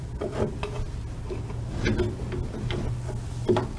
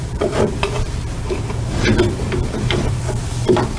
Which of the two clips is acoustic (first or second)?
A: first